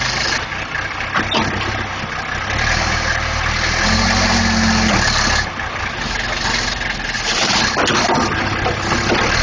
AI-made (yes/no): no